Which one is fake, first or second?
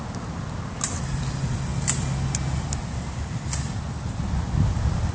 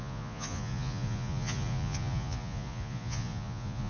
second